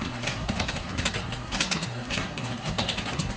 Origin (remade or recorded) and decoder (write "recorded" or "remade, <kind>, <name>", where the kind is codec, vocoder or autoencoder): remade, codec, SNAC